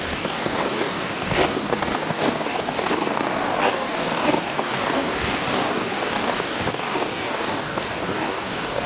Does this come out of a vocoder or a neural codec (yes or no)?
yes